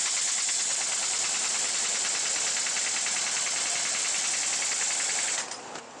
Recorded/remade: recorded